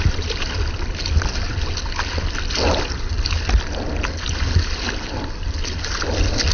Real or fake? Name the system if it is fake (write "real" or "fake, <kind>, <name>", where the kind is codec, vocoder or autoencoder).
real